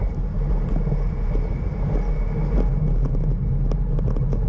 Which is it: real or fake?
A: real